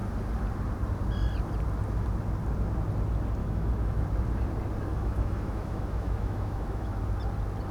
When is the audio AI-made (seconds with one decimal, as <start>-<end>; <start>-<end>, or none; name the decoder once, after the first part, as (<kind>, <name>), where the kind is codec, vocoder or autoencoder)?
3.4-4.0 (autoencoder, DAC-VAE); 4.9-7.0